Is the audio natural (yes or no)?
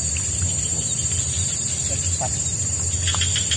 yes